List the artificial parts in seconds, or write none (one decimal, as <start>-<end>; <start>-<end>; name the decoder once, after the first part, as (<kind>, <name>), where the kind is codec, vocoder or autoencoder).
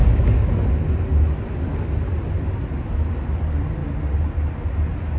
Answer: none